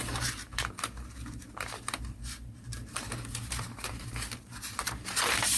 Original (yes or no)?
no